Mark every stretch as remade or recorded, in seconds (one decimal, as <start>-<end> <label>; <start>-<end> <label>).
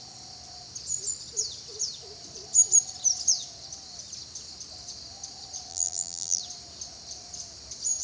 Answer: 0.0-5.7 recorded; 5.7-6.4 remade; 6.4-8.0 recorded